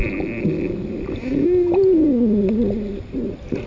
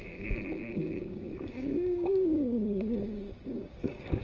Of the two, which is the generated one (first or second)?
second